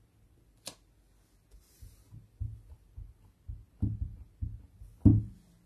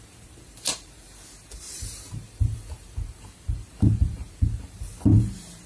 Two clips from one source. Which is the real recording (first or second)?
first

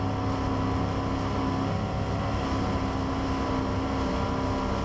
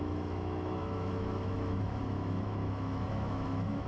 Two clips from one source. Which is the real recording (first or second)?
first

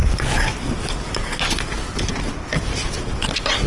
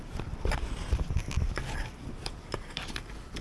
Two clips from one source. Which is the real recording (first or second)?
first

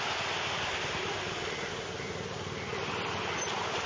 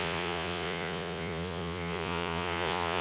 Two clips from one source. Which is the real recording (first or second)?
first